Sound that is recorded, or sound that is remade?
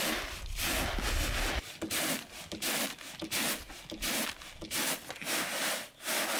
recorded